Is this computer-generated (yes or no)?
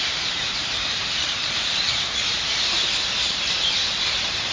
yes